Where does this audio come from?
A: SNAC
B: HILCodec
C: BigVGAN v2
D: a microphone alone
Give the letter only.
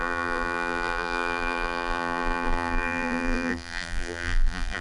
C